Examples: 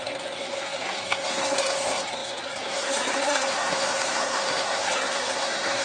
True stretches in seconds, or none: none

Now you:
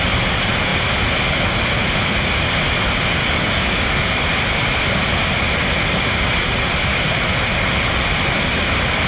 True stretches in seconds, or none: 0.0-3.2; 4.1-9.1

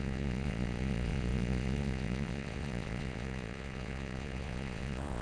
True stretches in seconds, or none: none

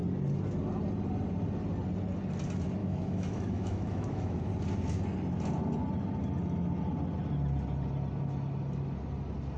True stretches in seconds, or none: 0.0-2.8; 4.5-9.6

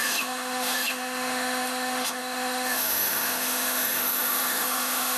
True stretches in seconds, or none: none

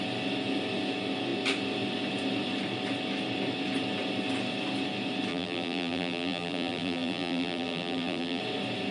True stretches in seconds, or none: 0.0-5.3; 8.4-8.9

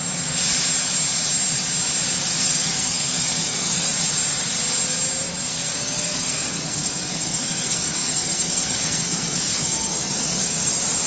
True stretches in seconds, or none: 0.0-2.4; 3.9-5.5; 10.7-11.1

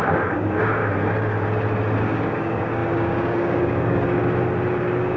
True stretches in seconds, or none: 0.8-2.0; 4.2-4.8